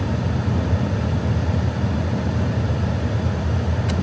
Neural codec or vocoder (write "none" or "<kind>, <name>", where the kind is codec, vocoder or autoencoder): none